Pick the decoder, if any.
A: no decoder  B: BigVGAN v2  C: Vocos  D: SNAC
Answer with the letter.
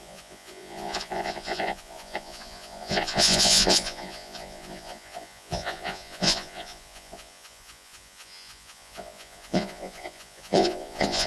C